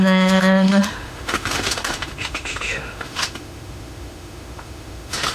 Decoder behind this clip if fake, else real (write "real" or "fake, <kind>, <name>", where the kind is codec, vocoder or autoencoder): fake, autoencoder, DAC-VAE